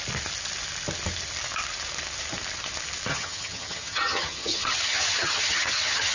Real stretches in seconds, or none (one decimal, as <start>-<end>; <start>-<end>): 0.0-3.1